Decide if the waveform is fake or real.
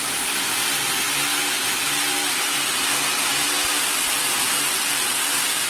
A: real